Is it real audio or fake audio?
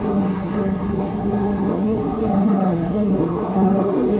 fake